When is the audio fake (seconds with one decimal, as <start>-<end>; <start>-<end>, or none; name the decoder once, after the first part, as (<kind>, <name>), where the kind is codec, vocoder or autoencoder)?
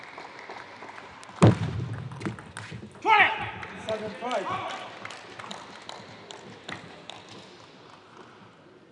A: none